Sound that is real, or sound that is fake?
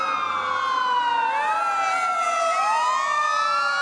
real